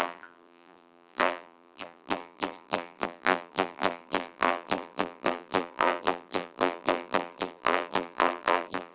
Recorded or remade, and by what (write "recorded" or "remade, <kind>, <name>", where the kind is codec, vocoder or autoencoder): remade, vocoder, BigVGAN v2